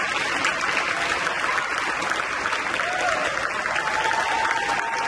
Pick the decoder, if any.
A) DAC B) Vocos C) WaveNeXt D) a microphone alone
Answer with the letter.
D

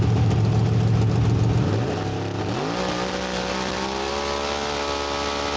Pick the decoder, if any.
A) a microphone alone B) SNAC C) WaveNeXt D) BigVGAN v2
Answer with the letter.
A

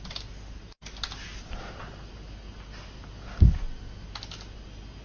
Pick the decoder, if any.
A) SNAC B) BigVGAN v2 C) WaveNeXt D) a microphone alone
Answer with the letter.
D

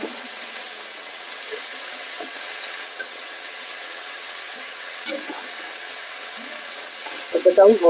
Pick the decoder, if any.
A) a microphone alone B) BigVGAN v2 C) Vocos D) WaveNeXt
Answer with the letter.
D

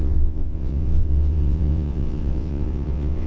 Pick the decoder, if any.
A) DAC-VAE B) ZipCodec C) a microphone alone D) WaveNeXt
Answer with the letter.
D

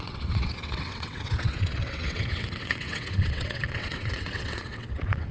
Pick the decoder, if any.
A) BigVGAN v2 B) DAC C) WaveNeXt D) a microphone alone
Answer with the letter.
C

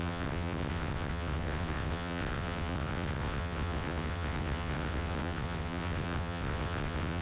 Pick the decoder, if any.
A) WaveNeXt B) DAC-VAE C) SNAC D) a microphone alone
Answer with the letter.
A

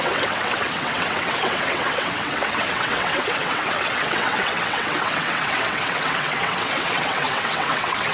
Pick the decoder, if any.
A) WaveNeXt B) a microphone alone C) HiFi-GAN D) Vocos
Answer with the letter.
A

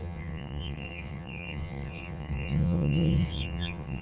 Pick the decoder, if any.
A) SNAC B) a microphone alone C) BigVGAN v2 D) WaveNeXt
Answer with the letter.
D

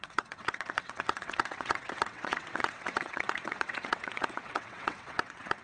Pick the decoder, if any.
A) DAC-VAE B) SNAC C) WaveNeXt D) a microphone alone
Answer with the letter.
C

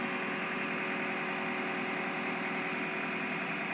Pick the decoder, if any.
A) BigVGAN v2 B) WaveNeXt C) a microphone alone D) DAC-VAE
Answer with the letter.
C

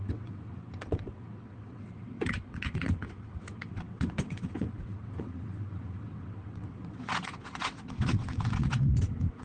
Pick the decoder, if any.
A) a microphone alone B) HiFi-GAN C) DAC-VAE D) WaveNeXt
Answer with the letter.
D